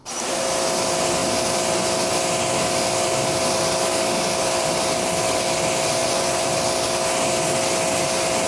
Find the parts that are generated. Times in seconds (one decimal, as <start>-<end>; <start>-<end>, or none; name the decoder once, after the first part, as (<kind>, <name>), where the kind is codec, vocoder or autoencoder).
6.0-6.5 (vocoder, Vocos)

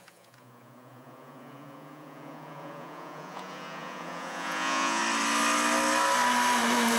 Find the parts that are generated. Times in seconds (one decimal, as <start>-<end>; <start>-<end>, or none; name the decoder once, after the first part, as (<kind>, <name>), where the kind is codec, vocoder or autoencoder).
0.0-5.0 (vocoder, Vocos)

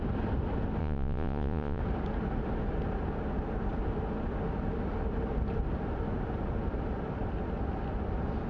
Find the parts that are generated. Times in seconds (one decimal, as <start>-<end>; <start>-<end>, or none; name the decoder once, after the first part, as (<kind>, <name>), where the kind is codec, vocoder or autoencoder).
0.8-1.8 (vocoder, Vocos)